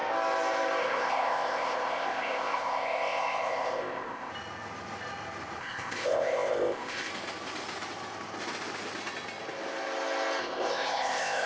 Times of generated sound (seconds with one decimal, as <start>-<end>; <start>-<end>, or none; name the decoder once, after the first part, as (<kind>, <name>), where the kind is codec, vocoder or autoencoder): 0.8-4.3 (codec, ZipCodec); 5.6-7.1; 10.4-11.5